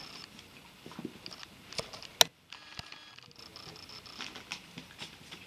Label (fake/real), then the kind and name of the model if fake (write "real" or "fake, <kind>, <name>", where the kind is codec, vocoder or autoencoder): real